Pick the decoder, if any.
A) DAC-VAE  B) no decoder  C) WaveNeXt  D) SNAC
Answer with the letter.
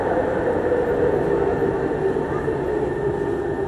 B